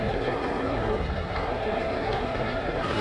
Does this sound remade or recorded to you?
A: remade